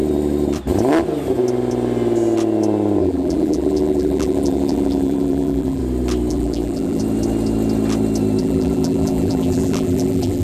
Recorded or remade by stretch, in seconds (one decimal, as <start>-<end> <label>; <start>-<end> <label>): 0.0-3.0 recorded; 3.0-5.8 remade; 5.8-6.3 recorded; 6.3-7.0 remade; 7.0-8.4 recorded; 8.4-10.4 remade